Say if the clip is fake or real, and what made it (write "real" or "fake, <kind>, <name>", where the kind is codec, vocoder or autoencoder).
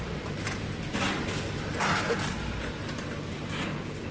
real